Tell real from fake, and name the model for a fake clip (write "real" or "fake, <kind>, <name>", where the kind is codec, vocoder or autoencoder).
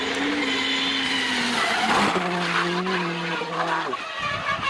real